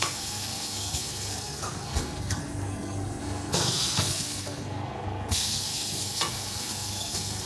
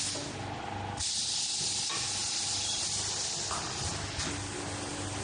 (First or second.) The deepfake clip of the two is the first